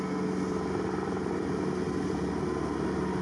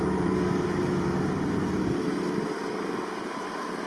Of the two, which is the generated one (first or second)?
second